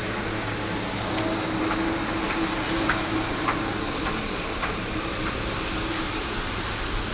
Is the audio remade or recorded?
remade